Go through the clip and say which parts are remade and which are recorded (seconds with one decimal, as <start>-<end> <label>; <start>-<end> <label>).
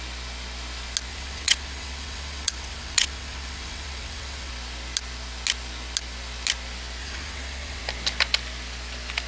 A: 0.0-1.1 recorded; 1.1-4.5 remade; 4.5-7.0 recorded; 7.0-7.8 remade; 7.8-9.3 recorded